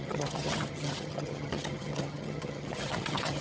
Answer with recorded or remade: remade